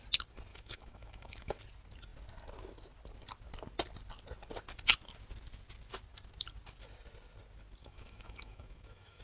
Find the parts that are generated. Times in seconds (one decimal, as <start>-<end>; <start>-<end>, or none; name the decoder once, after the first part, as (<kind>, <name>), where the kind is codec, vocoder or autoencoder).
0.5-1.6 (autoencoder, DAC-VAE); 7.8-9.2